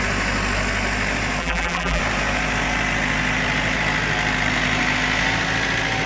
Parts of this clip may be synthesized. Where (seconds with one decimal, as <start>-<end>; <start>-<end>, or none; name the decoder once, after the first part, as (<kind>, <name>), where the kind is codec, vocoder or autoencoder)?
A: 1.4-2.0 (vocoder, BigVGAN v2)